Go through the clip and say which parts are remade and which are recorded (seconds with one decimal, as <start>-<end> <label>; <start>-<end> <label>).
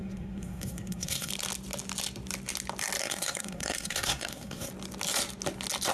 0.0-1.3 remade; 1.3-3.0 recorded; 3.0-4.7 remade; 4.7-5.9 recorded